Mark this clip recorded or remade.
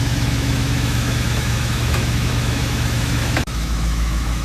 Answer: remade